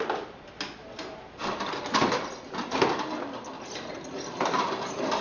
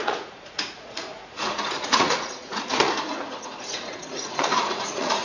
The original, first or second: first